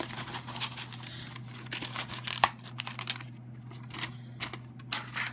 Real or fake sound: real